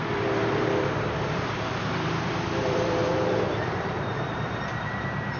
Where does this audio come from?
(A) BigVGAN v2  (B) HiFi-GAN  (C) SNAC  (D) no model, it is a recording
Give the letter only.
A